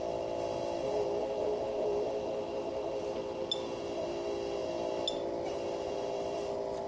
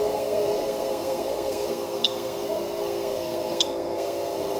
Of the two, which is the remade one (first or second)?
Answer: second